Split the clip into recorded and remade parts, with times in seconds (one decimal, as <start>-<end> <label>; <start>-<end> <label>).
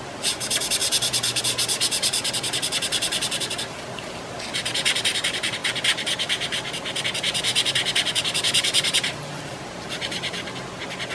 0.0-11.1 recorded